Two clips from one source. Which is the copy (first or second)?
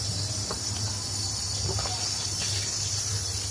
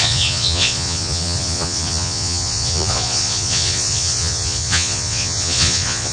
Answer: second